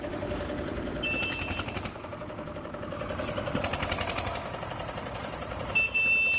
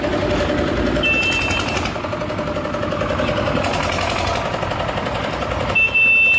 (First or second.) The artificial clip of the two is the first